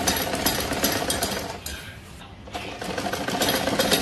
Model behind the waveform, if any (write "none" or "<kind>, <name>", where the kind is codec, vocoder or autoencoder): none